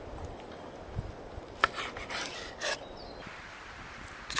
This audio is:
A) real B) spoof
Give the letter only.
A